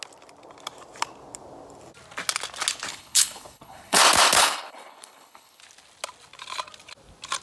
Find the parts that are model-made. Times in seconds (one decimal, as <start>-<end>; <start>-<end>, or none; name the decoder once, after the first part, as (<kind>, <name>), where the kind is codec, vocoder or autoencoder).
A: 2.9-4.0 (codec, HILCodec); 4.4-5.6